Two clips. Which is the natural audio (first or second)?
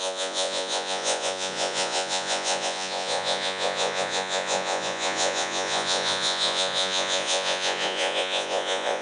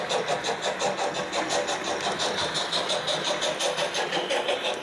second